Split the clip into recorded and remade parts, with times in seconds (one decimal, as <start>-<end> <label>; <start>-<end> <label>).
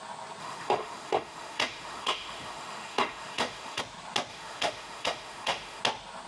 0.0-0.4 recorded; 0.4-3.8 remade; 3.8-4.3 recorded; 4.3-5.8 remade; 5.8-6.3 recorded